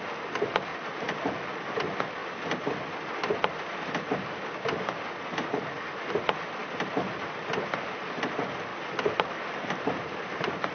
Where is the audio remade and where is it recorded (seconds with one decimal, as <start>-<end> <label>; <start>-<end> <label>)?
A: 0.0-0.7 recorded; 0.7-1.3 remade; 1.3-8.7 recorded; 8.7-10.7 remade